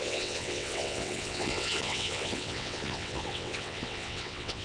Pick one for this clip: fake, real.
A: fake